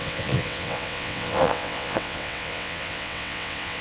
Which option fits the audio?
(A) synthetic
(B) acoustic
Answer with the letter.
A